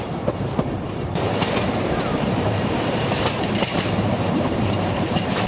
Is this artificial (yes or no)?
yes